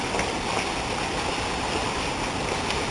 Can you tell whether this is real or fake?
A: real